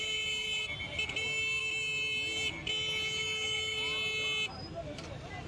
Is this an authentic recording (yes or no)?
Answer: yes